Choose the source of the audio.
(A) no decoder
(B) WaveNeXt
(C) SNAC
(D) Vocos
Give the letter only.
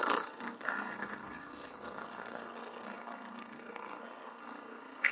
C